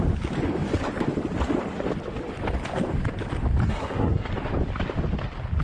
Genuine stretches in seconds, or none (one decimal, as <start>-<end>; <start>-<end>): 0.0-3.6; 4.3-5.6